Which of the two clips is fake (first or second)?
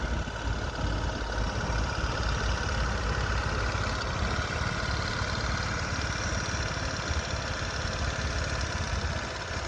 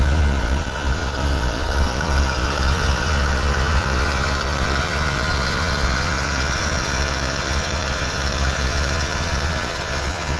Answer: second